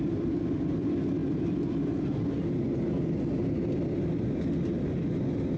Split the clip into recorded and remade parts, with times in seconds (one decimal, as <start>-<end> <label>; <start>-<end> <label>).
0.0-5.6 recorded

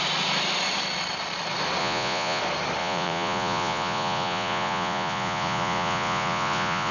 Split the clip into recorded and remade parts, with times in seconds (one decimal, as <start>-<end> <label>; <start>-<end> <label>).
0.0-1.8 recorded; 1.8-2.4 remade; 2.4-2.8 recorded; 2.8-6.9 remade

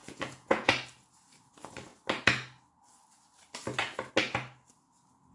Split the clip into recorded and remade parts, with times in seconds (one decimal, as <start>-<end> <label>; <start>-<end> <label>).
0.0-0.7 remade; 0.7-5.3 recorded

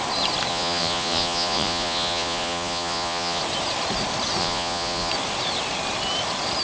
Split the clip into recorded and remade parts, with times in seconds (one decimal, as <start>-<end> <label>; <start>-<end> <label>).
0.0-0.5 recorded; 0.5-3.4 remade; 3.4-4.4 recorded; 4.4-5.1 remade; 5.1-6.6 recorded

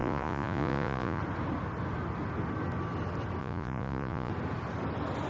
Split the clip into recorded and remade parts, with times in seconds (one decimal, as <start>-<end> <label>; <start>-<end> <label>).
0.0-1.2 remade; 1.2-3.4 recorded; 3.4-4.3 remade; 4.3-5.3 recorded